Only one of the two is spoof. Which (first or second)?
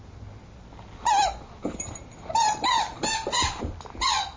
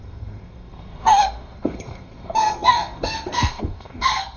second